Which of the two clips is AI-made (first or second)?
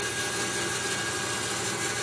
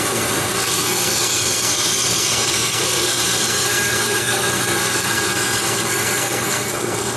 second